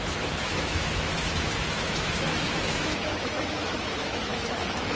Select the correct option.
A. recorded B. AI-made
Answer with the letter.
B